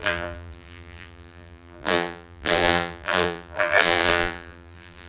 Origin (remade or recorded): remade